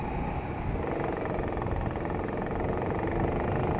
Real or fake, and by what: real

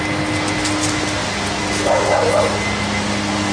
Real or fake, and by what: real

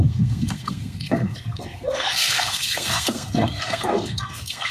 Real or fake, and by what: fake, codec, SNAC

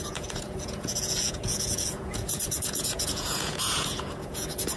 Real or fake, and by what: fake, vocoder, Vocos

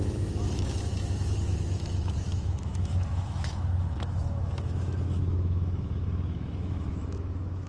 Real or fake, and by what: fake, autoencoder, DAC-VAE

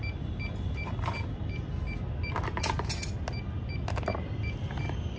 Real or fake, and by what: real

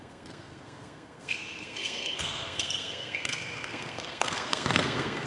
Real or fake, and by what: fake, codec, SNAC